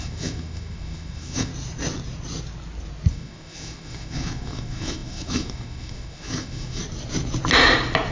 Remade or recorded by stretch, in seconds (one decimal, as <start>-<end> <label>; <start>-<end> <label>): 0.0-1.5 remade; 1.5-3.1 recorded; 3.1-6.8 remade; 6.8-8.1 recorded